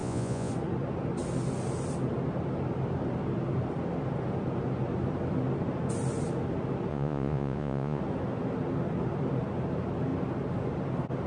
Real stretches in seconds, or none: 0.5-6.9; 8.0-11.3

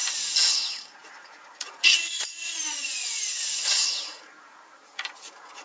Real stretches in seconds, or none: 0.0-0.5

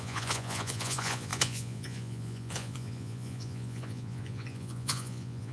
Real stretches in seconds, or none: none

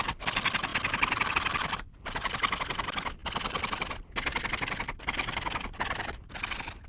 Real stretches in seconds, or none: 0.0-6.9

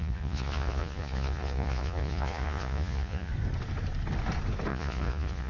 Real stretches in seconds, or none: 3.3-4.7

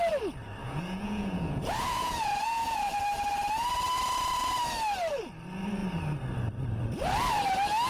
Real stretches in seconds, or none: 0.0-0.6; 2.9-7.9

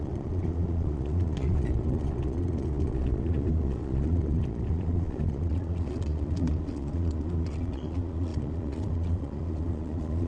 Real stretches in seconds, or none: none